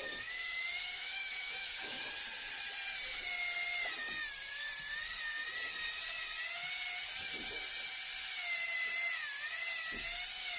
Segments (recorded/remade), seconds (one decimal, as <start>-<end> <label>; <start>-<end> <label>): 0.0-0.4 recorded; 0.4-2.1 remade; 2.1-10.6 recorded